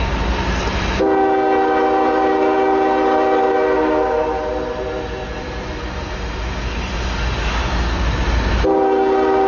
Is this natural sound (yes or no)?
yes